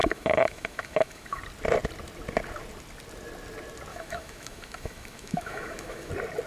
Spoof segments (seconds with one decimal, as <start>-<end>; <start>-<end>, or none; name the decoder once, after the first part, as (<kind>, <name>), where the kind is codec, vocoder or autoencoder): 0.0-1.4 (autoencoder, DAC-VAE); 3.9-6.1

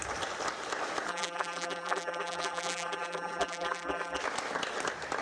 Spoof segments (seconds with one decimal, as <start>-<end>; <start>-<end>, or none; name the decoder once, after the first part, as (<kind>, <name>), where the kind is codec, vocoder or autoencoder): 1.1-4.2 (vocoder, BigVGAN v2)

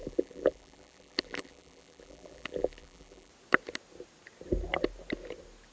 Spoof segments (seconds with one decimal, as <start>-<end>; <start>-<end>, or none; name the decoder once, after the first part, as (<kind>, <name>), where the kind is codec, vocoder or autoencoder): 0.0-3.3 (vocoder, BigVGAN v2)

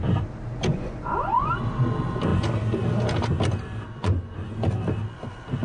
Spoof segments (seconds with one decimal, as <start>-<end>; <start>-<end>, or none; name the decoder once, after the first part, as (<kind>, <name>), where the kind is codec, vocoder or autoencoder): 0.7-1.5 (vocoder, Vocos); 4.0-4.6

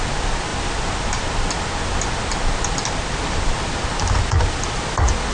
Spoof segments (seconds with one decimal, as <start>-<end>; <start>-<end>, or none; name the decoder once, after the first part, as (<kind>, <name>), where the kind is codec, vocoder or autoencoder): none

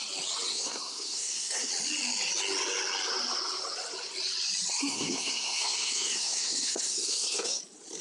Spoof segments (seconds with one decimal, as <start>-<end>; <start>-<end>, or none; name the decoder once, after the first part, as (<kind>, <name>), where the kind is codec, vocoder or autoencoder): 0.5-1.7 (codec, SNAC); 4.8-7.6

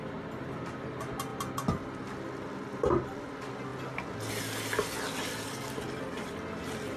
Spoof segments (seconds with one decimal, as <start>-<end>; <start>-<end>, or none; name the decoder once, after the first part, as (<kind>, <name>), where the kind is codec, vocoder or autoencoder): none